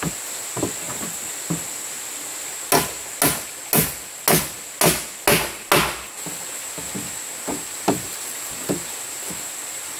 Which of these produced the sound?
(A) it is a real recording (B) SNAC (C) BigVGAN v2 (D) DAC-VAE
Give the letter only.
A